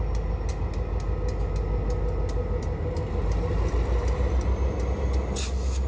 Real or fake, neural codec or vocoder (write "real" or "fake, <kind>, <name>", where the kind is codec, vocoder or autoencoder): real